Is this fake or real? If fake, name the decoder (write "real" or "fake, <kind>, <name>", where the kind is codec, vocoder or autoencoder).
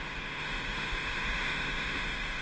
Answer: fake, autoencoder, DAC-VAE